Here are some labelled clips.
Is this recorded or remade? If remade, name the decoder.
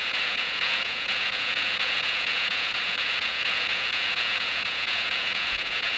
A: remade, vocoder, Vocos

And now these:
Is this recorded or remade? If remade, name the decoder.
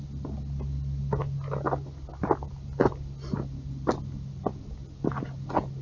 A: recorded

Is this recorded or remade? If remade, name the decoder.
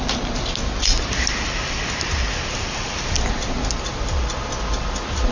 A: recorded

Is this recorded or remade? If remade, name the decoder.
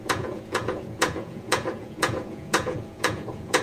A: remade, vocoder, Vocos